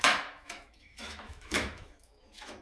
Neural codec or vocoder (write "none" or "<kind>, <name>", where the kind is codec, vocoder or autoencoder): autoencoder, DAC-VAE